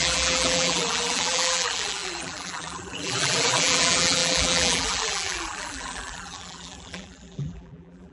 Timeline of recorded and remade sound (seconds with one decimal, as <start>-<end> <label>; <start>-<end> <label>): 0.0-8.1 remade